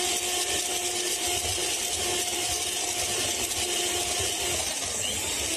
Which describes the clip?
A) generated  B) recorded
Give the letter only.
B